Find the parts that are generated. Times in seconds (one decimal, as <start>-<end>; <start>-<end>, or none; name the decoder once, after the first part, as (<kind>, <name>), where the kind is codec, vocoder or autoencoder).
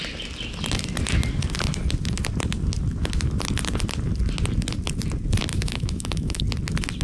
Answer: 5.5-6.4 (autoencoder, DAC-VAE)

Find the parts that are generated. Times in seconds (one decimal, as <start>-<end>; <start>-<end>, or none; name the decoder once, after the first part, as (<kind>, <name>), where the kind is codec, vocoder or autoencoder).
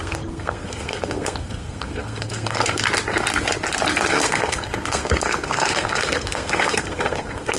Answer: 0.0-2.8 (codec, SNAC); 4.1-7.6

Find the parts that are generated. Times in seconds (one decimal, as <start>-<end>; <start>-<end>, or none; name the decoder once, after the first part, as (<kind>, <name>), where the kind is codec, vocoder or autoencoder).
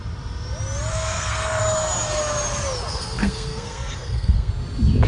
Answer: 0.9-1.6 (codec, SNAC); 2.9-4.5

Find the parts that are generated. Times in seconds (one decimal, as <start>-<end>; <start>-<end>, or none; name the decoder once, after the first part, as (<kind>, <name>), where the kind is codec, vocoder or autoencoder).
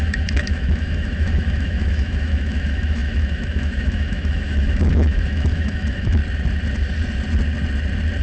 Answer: 0.0-6.2 (autoencoder, DAC-VAE)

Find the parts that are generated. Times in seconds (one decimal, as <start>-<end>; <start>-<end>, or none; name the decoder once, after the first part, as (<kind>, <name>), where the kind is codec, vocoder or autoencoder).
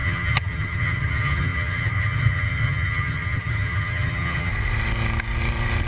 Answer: 0.0-4.5 (vocoder, HiFi-GAN)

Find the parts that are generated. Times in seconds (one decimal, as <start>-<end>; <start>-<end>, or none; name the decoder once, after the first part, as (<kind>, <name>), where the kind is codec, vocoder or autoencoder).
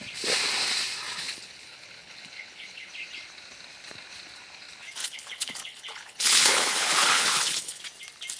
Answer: 1.2-2.9 (codec, HILCodec); 5.0-7.8